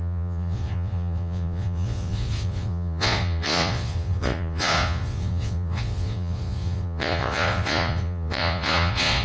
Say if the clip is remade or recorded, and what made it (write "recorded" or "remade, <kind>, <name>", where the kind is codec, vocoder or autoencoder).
remade, vocoder, Vocos